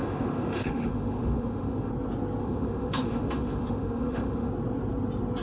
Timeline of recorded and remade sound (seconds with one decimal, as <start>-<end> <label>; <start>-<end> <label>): 0.0-1.9 remade; 1.9-2.4 recorded; 2.4-4.5 remade; 4.5-5.4 recorded